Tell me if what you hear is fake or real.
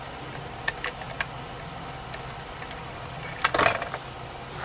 real